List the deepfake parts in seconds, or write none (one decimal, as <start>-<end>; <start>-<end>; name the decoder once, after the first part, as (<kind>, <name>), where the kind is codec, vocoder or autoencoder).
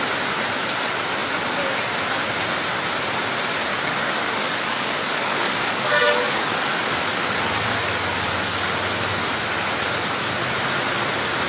3.7-7.4 (codec, DAC)